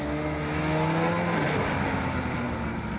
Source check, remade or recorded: recorded